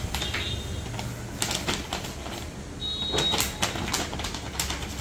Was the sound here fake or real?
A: real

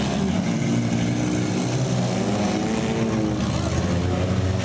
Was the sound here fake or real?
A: real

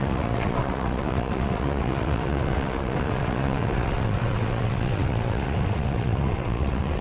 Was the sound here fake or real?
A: fake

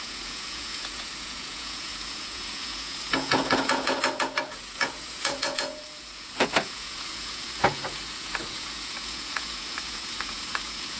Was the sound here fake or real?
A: fake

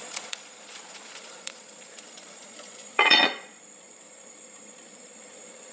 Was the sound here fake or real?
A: fake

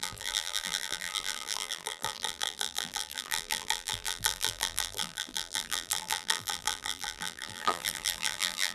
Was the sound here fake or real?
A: fake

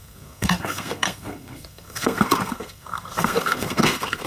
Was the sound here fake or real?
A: fake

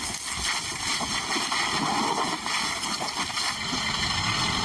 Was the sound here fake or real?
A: real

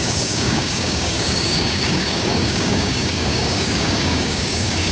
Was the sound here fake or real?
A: fake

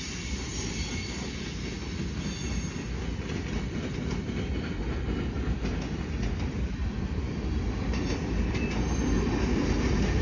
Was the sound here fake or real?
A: real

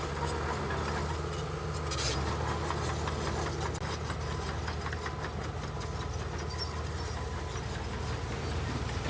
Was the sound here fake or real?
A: real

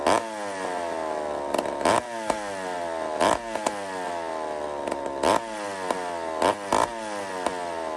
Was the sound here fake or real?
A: real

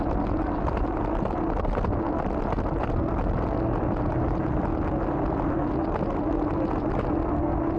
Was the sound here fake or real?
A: real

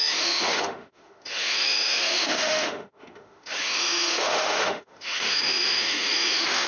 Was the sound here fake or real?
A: fake